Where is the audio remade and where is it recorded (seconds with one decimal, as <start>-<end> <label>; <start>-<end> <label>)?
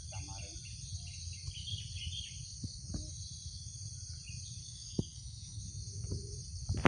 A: 0.0-4.6 recorded; 4.6-5.6 remade; 5.6-6.9 recorded